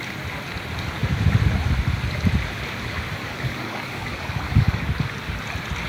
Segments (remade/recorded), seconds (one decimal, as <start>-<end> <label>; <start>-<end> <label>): 0.0-3.2 recorded; 3.2-4.9 remade; 4.9-5.9 recorded